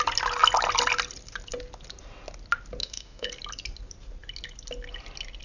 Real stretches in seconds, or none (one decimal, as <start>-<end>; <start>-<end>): 0.0-2.8; 3.3-5.4